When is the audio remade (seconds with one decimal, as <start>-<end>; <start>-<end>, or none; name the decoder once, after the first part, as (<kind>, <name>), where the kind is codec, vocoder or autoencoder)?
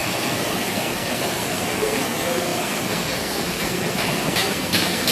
0.0-5.1 (codec, SNAC)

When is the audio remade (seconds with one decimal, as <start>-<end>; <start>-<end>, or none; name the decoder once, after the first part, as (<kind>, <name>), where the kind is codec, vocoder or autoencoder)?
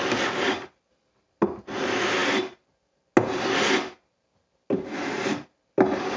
none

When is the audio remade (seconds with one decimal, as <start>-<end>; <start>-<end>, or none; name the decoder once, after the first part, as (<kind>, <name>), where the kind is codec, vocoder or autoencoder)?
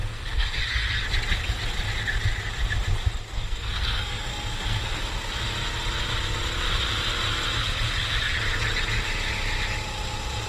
0.0-0.6 (codec, SNAC); 3.3-5.0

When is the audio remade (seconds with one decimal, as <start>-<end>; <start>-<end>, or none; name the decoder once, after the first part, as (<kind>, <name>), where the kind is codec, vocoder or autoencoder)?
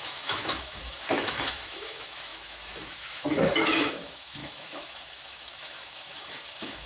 0.0-6.9 (autoencoder, DAC-VAE)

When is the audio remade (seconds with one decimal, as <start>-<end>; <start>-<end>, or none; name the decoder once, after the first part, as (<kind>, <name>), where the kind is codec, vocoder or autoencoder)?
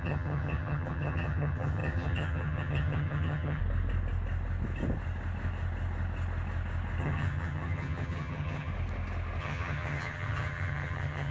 0.0-3.6 (vocoder, HiFi-GAN); 7.0-8.7; 9.4-11.3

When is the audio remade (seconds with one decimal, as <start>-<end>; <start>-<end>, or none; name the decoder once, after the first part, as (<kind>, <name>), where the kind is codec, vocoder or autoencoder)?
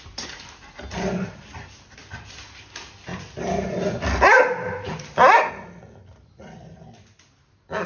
none